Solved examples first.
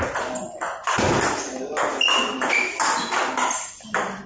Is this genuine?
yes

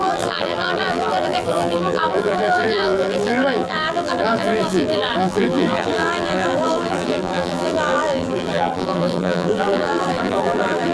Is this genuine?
no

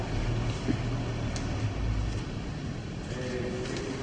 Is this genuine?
yes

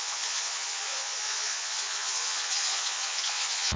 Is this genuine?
no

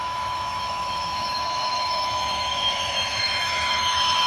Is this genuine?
no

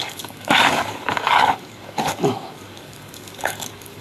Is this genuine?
no